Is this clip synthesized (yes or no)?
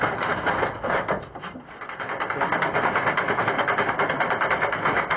no